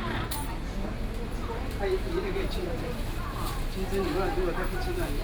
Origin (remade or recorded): recorded